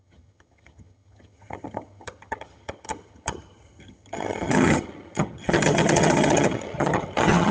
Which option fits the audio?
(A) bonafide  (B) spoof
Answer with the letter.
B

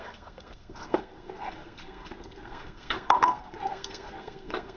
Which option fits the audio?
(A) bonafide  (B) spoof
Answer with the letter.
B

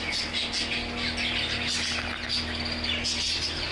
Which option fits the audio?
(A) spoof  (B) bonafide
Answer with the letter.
B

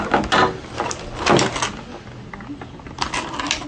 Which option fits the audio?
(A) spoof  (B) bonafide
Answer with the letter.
B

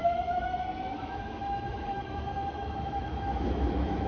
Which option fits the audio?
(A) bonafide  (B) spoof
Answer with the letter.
B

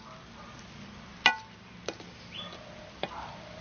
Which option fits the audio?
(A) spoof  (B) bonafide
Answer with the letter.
B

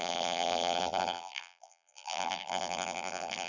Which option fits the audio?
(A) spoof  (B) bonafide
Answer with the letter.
A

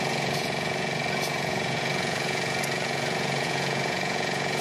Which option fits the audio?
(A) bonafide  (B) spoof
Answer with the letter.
B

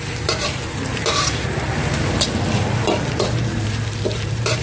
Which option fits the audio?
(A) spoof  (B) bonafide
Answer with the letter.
A